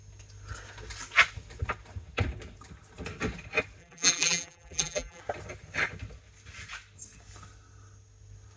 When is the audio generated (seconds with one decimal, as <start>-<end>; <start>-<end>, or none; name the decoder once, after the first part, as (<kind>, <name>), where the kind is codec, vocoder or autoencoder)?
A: 3.8-5.2 (vocoder, BigVGAN v2)